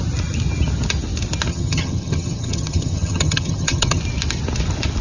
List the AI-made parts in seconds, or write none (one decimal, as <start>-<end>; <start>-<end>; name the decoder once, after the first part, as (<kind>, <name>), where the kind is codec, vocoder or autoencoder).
1.5-4.0 (vocoder, HiFi-GAN)